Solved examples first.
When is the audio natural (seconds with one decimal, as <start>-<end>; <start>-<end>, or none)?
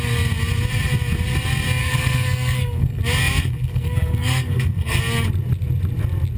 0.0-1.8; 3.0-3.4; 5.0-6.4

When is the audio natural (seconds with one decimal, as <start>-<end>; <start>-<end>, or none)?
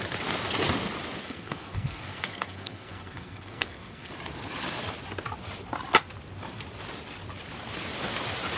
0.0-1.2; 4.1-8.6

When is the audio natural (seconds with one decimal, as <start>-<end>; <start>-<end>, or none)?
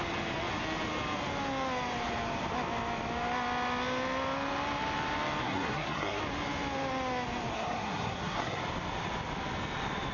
0.0-5.4; 6.2-7.5; 8.6-10.1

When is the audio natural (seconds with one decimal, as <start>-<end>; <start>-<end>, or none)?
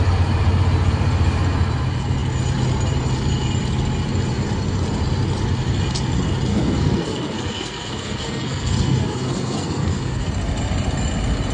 0.0-6.5; 10.3-11.5